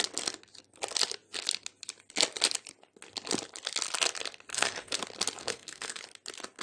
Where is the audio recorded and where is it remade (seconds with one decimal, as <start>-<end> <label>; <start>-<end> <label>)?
0.0-4.5 recorded; 4.5-5.0 remade; 5.0-5.4 recorded; 5.4-6.0 remade; 6.0-6.6 recorded